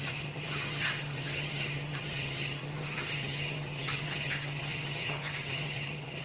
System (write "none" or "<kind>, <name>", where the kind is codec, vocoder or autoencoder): vocoder, HiFi-GAN